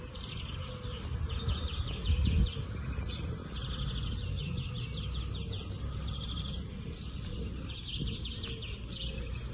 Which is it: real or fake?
real